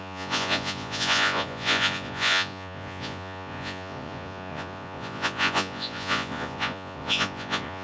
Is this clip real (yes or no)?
no